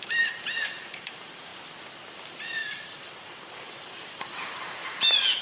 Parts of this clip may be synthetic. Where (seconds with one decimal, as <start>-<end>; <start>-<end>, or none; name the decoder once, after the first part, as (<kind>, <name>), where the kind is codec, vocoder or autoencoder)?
0.0-1.5 (vocoder, BigVGAN v2); 2.1-5.4